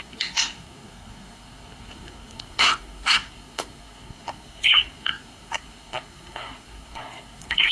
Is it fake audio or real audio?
fake